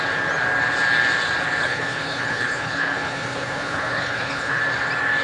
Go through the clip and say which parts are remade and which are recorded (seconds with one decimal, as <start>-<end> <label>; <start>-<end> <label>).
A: 0.0-1.6 recorded; 1.6-4.6 remade; 4.6-5.2 recorded